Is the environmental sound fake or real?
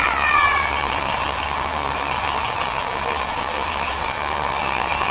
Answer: fake